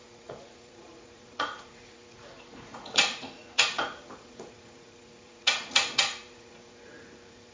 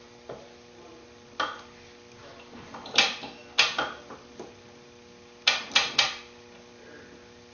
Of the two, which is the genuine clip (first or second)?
second